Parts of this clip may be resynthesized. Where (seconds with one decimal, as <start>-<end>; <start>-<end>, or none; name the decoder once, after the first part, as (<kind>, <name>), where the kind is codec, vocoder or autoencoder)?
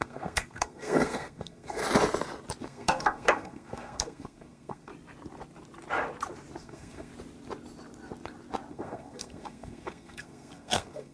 0.0-1.8 (codec, SNAC); 2.6-4.9; 6.6-7.1; 8.7-11.1